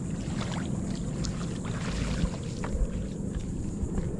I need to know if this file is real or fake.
real